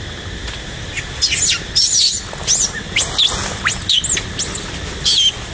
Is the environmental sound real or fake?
real